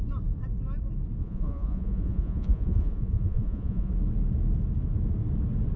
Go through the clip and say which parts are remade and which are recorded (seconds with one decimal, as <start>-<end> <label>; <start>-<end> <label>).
0.0-1.2 recorded; 1.2-3.9 remade; 3.9-5.8 recorded